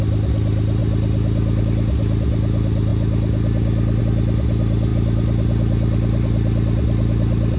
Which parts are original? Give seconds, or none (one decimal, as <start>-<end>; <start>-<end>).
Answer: 0.0-4.9